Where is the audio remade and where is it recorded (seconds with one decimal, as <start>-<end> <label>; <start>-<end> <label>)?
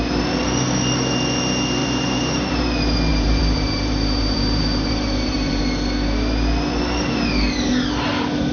0.0-1.8 recorded; 1.8-2.5 remade; 2.5-3.1 recorded; 3.1-5.6 remade; 5.6-8.5 recorded